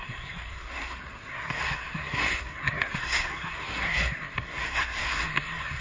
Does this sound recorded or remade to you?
remade